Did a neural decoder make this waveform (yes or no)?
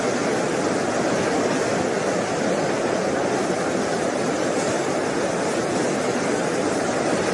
no